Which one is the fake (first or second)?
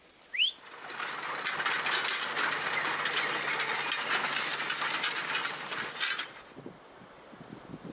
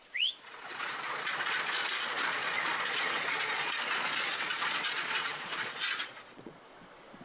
second